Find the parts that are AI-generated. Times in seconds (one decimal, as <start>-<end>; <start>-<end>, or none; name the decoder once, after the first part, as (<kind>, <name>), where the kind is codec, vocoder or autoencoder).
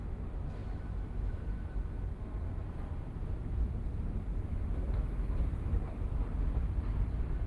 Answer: 0.6-1.8 (autoencoder, DAC-VAE); 3.2-3.8; 4.3-5.4